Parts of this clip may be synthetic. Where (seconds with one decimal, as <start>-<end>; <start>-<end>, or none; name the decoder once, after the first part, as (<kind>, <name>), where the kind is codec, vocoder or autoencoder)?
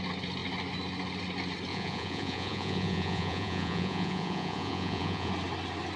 1.7-5.3 (vocoder, Vocos)